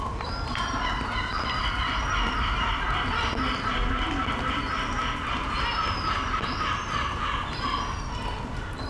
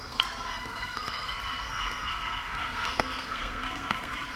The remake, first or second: second